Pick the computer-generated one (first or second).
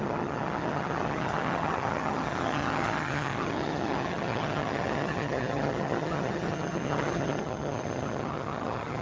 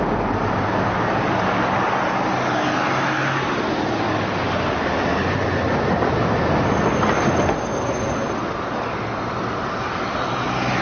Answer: first